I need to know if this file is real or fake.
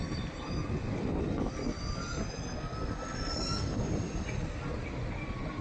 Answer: real